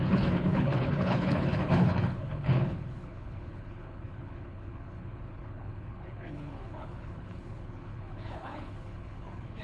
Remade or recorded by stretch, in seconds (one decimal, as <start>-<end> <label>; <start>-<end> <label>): 0.0-9.6 remade